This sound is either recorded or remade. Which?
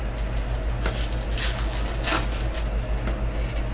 recorded